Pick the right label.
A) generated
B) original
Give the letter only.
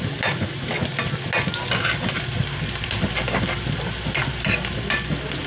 B